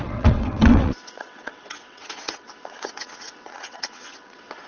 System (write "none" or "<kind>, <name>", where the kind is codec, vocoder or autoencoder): vocoder, WaveNeXt